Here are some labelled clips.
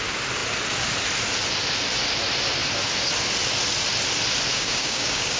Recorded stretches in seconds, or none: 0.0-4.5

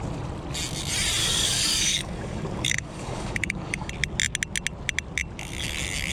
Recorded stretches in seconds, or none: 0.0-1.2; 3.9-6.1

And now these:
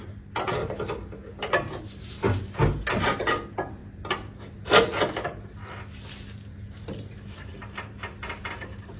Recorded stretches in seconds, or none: 0.0-0.6; 1.3-9.0